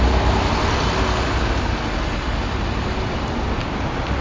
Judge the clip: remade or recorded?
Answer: recorded